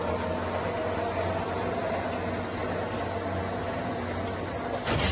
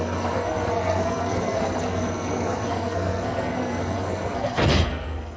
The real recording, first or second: first